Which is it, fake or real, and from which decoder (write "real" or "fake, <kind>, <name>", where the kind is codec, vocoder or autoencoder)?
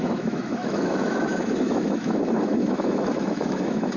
fake, autoencoder, DAC-VAE